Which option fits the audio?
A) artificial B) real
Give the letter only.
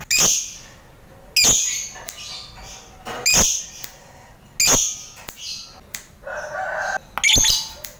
B